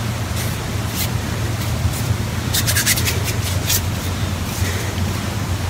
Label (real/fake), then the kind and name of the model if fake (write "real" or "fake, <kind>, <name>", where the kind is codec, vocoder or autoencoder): fake, vocoder, BigVGAN v2